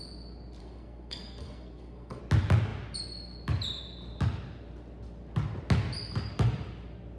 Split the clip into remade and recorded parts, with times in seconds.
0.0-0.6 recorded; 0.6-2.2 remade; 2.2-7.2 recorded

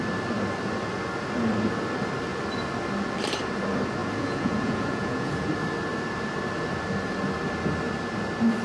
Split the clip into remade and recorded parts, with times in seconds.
0.0-4.0 recorded; 4.0-5.5 remade; 5.5-8.6 recorded

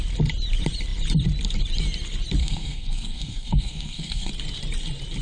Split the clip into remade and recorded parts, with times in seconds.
0.0-2.4 recorded; 2.4-4.3 remade; 4.3-5.2 recorded

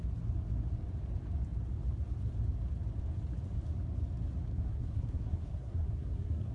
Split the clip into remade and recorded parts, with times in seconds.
0.0-4.5 recorded; 4.5-6.5 remade

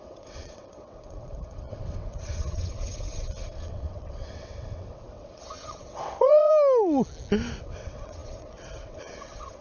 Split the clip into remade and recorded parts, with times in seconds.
0.0-6.5 remade; 6.5-7.6 recorded; 7.6-9.6 remade